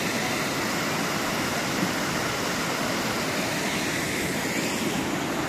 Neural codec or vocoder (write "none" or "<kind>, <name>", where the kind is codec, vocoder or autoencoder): none